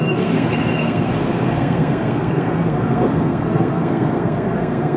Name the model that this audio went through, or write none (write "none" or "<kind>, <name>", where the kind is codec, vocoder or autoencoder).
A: codec, SNAC